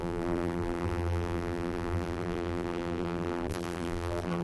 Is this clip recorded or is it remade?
remade